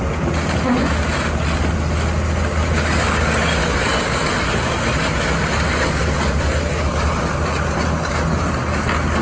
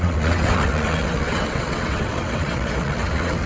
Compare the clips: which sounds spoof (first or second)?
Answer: second